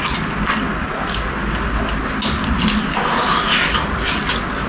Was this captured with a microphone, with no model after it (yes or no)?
yes